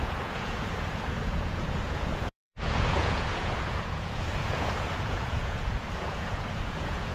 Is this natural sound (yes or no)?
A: no